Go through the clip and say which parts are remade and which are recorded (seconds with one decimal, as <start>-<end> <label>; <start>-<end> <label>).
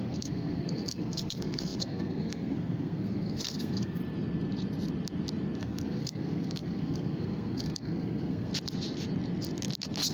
0.0-4.0 remade; 4.0-5.6 recorded; 5.6-8.5 remade; 8.5-10.1 recorded